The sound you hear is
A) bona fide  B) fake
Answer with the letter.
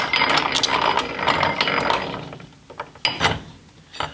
A